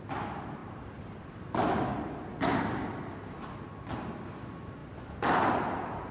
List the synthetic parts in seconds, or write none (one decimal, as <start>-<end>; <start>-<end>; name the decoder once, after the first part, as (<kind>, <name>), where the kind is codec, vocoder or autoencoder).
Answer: 0.6-1.2 (vocoder, BigVGAN v2); 4.8-5.5